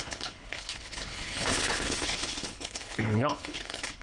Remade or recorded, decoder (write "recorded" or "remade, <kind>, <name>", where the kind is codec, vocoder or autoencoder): remade, codec, HILCodec